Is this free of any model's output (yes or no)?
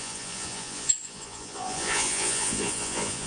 no